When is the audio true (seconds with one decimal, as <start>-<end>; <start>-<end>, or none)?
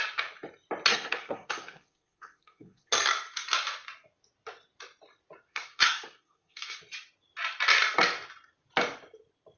0.0-0.9; 2.9-5.5; 6.8-9.6